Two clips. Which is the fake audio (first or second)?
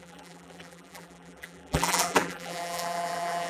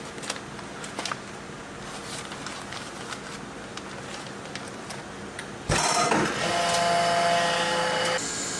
first